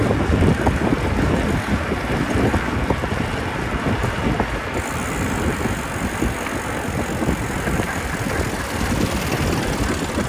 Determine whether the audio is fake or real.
real